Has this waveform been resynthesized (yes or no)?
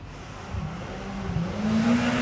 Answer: no